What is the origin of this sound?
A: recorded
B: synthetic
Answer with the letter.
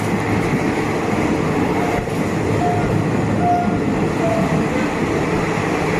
A